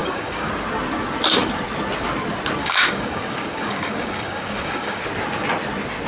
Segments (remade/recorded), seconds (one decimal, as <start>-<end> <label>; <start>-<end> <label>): 0.0-0.5 remade; 0.5-2.6 recorded; 2.6-5.0 remade; 5.0-6.1 recorded